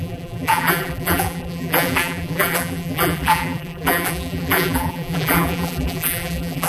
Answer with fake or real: fake